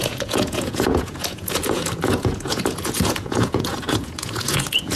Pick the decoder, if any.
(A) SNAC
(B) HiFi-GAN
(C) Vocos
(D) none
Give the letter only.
C